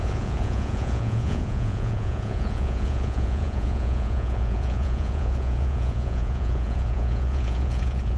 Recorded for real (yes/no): no